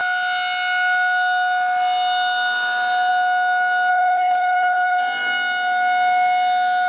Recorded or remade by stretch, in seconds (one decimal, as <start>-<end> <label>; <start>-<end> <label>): 0.0-3.9 recorded; 3.9-5.0 remade; 5.0-6.9 recorded